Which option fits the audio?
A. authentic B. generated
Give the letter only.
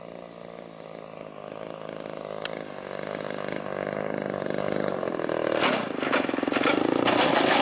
A